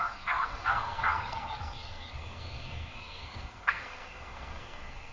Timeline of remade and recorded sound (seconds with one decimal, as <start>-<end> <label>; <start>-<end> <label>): 0.0-5.1 remade